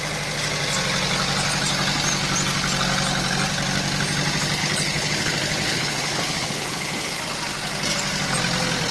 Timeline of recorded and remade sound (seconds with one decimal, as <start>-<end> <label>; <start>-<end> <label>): 0.0-4.6 recorded; 4.6-7.2 remade; 7.2-8.9 recorded